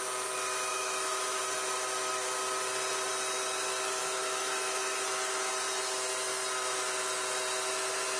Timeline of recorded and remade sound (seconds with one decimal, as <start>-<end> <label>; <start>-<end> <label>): 0.0-0.7 recorded; 0.7-1.4 remade; 1.4-4.0 recorded; 4.0-5.5 remade; 5.5-8.2 recorded

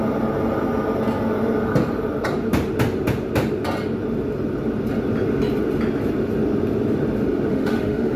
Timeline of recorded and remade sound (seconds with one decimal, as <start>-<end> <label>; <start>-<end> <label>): 0.0-7.5 recorded; 7.5-8.2 remade

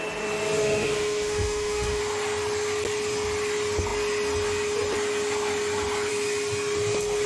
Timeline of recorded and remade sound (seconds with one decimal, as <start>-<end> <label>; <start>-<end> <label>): 0.0-0.6 recorded; 0.6-2.0 remade; 2.0-7.3 recorded

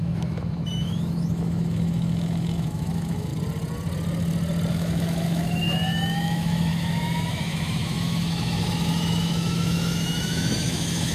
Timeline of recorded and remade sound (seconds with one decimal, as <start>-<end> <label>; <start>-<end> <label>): 0.0-3.3 remade; 3.3-4.7 recorded; 4.7-11.1 remade

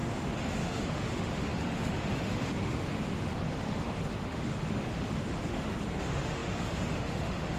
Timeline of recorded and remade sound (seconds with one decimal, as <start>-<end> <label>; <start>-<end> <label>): 0.0-7.6 remade

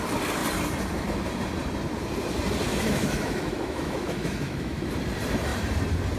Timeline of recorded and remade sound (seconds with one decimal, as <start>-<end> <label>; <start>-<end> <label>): 0.0-2.7 recorded; 2.7-4.9 remade; 4.9-6.2 recorded